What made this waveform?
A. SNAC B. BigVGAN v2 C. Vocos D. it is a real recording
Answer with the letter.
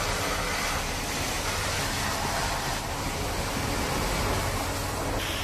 D